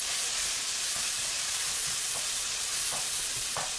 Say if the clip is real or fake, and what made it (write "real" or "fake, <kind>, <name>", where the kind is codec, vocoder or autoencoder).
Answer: fake, vocoder, Vocos